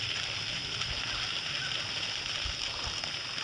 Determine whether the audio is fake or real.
real